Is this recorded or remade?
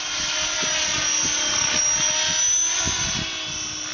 recorded